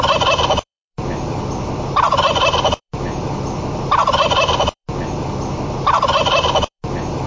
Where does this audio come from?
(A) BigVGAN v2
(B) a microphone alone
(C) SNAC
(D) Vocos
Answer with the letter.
A